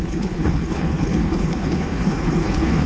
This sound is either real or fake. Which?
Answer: fake